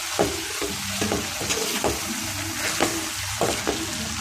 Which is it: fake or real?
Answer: real